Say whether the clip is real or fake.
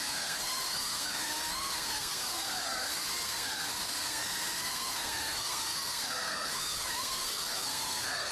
fake